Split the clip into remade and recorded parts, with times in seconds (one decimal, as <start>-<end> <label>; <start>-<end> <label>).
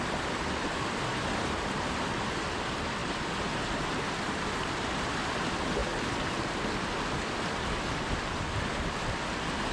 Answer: 0.0-5.8 remade; 5.8-7.1 recorded; 7.1-9.7 remade